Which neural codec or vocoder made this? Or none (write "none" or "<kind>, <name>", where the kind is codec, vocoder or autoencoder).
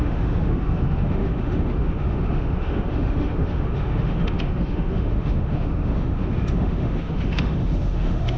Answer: autoencoder, DAC-VAE